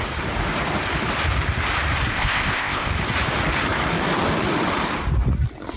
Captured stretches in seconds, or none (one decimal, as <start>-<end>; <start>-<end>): 0.0-2.1; 2.9-5.8